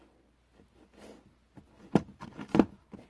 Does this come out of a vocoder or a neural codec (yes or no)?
no